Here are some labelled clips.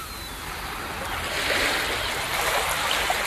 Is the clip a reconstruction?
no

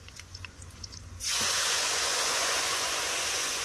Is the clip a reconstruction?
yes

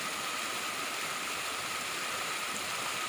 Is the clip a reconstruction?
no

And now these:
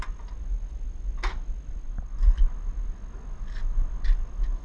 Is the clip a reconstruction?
no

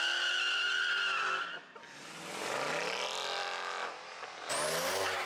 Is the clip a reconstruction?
no